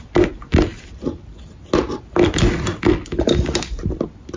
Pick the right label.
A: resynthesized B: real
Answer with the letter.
B